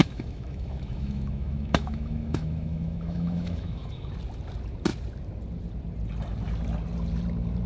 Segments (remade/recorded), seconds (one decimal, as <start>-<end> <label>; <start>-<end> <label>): 0.0-4.1 remade; 4.1-7.7 recorded